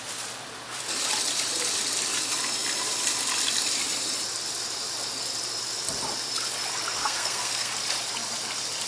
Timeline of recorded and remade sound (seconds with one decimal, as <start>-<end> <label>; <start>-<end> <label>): 0.0-7.0 recorded; 7.0-7.7 remade; 7.7-8.9 recorded